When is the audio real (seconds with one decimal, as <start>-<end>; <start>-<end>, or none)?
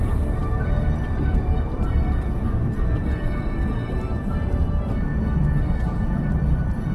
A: 5.1-5.7